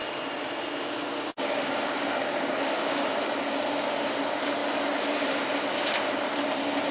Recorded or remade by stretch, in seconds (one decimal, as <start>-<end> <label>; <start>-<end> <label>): 0.0-1.0 recorded; 1.0-3.0 remade; 3.0-6.9 recorded